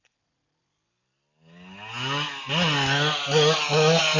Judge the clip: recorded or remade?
recorded